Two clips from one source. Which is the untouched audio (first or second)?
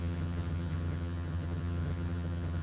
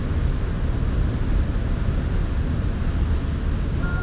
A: second